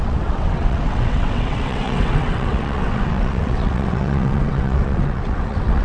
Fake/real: fake